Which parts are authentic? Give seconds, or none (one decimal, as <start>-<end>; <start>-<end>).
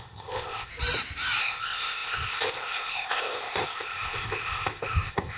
0.7-1.4